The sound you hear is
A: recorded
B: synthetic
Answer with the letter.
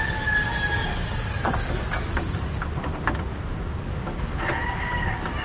A